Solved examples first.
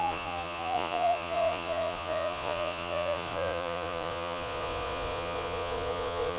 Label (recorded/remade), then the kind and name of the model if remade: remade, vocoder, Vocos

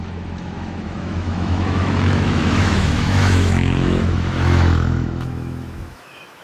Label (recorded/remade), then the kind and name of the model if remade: remade, autoencoder, DAC-VAE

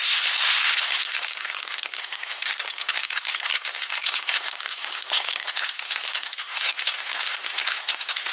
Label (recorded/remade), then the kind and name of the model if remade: remade, codec, SNAC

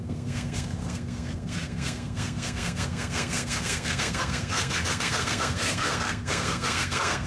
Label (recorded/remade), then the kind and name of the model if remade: remade, codec, SNAC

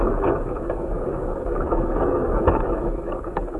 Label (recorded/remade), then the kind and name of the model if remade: remade, codec, DAC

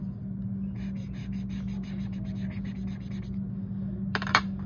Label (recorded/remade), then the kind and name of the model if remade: recorded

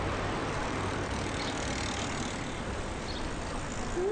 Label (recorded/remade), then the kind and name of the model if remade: recorded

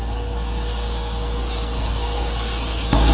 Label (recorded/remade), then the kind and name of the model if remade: remade, codec, SNAC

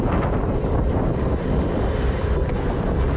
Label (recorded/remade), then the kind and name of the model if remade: remade, vocoder, BigVGAN v2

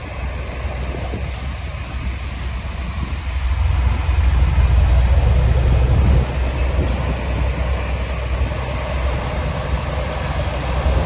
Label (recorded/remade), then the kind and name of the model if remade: recorded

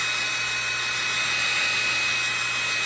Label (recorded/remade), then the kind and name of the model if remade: recorded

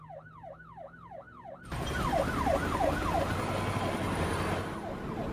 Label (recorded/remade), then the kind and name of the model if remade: recorded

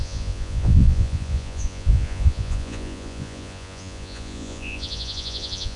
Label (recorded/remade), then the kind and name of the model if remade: remade, vocoder, Vocos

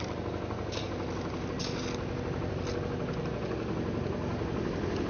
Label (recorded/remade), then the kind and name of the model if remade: recorded